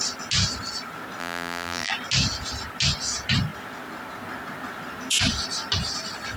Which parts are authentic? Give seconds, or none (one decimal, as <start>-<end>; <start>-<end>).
0.0-1.2; 1.9-6.4

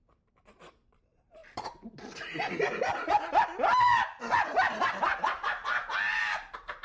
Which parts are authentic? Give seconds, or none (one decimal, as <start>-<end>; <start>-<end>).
5.6-6.2